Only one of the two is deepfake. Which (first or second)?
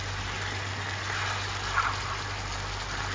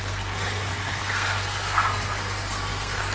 second